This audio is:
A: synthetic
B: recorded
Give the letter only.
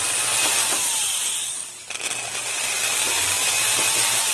B